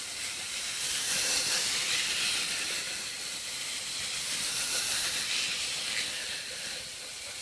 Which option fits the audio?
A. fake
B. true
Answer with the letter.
A